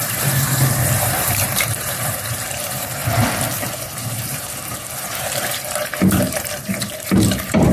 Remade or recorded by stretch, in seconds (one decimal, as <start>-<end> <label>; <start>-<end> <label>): 0.0-3.0 remade; 3.0-3.6 recorded; 3.6-7.7 remade